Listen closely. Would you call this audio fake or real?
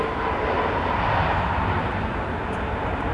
real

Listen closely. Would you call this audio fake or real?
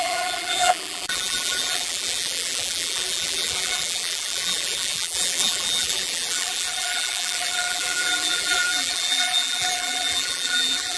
fake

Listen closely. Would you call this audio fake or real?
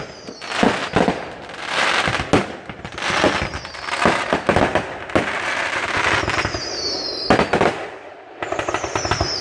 real